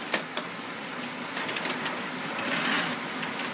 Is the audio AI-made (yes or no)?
no